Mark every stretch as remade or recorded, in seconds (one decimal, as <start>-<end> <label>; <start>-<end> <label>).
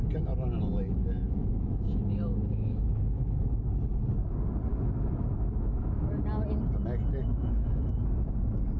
0.0-1.0 recorded; 1.0-3.6 remade; 3.6-4.7 recorded; 4.7-6.1 remade; 6.1-7.2 recorded; 7.2-7.9 remade; 7.9-8.8 recorded